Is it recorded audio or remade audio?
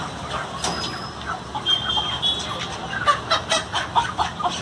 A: recorded